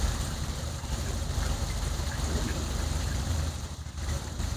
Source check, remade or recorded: remade